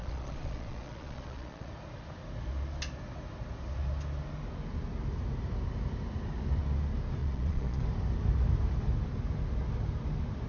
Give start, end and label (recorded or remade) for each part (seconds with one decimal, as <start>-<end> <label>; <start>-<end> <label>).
0.0-1.7 remade; 1.7-7.2 recorded; 7.2-7.8 remade; 7.8-10.5 recorded